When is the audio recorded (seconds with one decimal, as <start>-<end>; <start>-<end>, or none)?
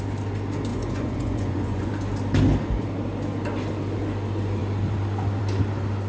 0.0-0.7; 1.9-6.1